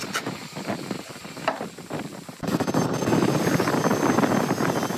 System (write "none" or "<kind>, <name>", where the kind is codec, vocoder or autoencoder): none